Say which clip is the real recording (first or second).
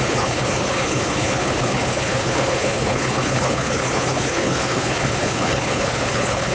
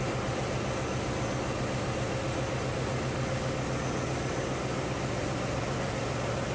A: second